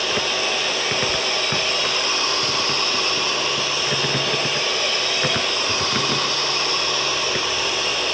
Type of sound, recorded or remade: recorded